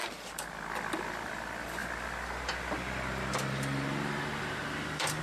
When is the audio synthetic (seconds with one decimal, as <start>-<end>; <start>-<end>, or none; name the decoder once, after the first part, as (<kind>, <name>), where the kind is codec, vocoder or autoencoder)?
0.0-5.2 (vocoder, BigVGAN v2)